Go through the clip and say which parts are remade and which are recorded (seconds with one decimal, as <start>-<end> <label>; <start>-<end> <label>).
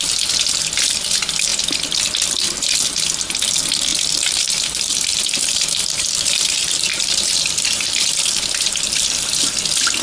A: 0.0-3.9 recorded; 3.9-8.1 remade; 8.1-10.0 recorded